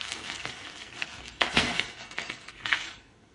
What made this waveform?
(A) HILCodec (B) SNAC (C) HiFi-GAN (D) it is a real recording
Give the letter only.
B